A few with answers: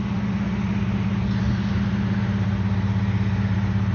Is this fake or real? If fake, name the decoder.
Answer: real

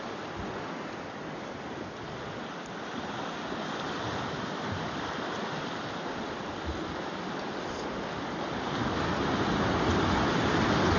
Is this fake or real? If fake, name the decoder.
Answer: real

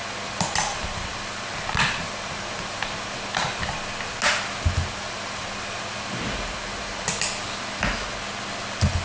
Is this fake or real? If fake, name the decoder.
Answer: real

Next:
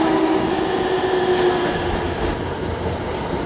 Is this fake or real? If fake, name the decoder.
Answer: real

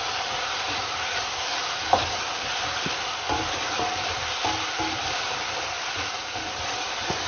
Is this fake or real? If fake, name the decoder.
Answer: real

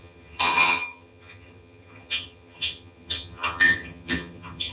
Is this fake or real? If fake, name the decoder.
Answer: fake, vocoder, HiFi-GAN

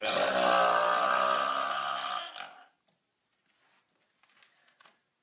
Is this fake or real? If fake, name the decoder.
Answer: real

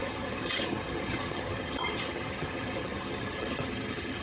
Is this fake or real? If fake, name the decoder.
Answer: fake, vocoder, HiFi-GAN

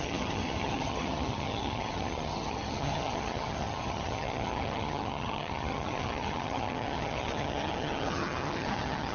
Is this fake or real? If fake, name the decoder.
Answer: fake, vocoder, HiFi-GAN